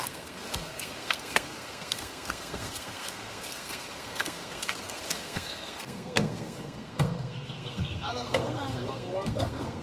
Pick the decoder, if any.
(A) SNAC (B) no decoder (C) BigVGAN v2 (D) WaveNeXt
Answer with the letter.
A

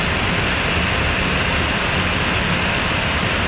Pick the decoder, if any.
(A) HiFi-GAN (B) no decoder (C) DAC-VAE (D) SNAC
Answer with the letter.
B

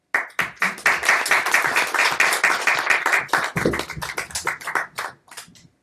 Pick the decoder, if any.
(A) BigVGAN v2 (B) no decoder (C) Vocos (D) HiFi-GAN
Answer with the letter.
B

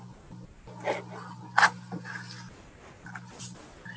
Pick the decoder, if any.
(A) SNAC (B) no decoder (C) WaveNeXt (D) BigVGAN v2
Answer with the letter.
B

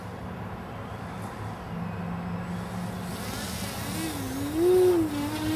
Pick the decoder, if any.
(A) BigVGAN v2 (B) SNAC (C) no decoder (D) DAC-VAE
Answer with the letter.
C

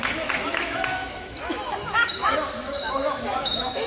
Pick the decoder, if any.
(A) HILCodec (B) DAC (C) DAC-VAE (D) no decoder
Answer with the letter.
C